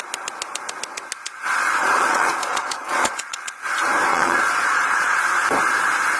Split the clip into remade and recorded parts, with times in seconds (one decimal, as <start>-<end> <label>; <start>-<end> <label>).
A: 0.0-1.8 recorded; 1.8-3.6 remade; 3.6-4.1 recorded; 4.1-5.2 remade; 5.2-6.2 recorded